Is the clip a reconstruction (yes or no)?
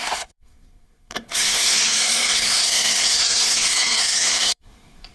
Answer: yes